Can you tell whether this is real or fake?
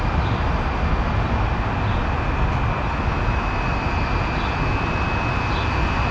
real